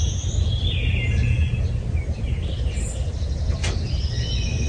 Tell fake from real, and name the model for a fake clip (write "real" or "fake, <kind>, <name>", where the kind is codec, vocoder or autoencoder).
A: real